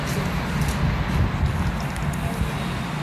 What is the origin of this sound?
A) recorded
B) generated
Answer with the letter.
A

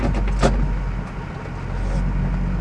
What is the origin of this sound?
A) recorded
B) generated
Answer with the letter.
A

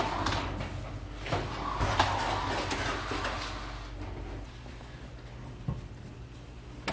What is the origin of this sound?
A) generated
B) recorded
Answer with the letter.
B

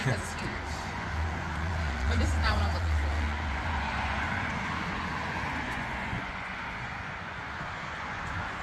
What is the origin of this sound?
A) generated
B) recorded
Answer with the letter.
A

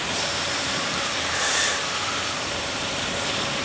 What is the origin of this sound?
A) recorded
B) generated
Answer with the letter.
B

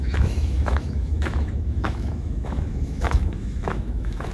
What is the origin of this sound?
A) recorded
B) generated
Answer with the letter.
B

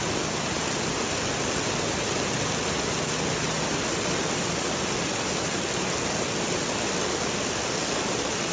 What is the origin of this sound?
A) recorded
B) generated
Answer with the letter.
A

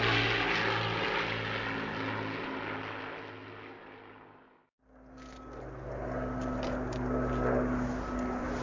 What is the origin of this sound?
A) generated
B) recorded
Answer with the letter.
B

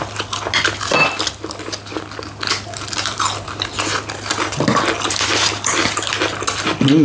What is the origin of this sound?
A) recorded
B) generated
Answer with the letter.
A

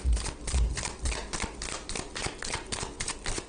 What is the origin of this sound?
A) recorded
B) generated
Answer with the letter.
A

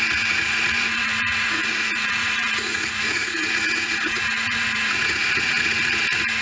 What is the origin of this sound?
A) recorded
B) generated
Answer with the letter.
B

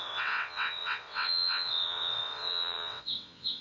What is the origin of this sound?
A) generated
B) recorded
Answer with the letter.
A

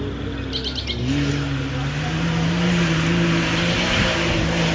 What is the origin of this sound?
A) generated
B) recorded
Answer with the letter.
B